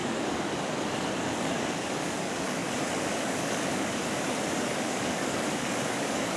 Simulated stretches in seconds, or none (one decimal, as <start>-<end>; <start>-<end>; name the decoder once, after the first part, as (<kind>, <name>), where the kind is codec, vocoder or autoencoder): 0.0-6.4 (codec, DAC)